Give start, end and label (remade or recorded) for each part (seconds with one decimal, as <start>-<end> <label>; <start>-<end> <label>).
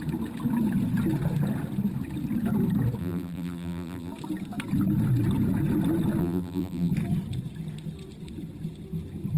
0.0-3.0 recorded; 3.0-4.1 remade; 4.1-6.2 recorded; 6.2-6.9 remade; 6.9-9.4 recorded